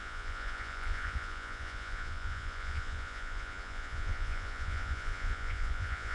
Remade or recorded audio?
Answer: remade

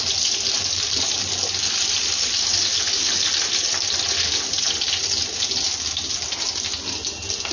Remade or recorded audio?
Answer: recorded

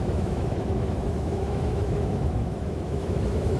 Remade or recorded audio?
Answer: remade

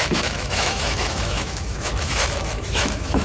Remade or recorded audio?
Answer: remade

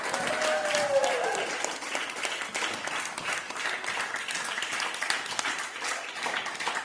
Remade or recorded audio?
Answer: recorded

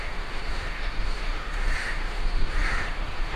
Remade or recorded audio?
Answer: remade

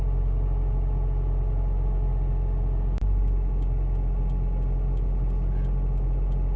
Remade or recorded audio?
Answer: recorded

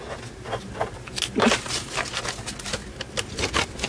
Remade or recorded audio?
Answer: recorded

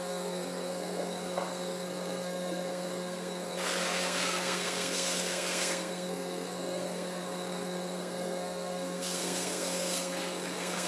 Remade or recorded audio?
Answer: remade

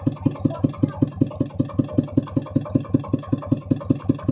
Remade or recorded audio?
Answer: recorded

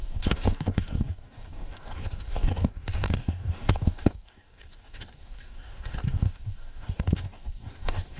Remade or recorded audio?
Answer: remade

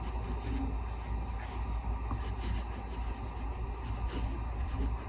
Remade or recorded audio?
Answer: recorded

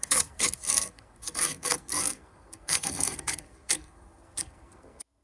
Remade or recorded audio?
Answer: remade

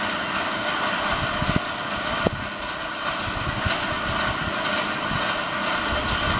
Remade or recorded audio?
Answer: recorded